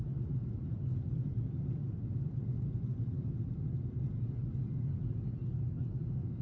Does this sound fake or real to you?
real